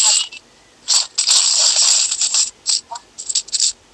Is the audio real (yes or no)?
yes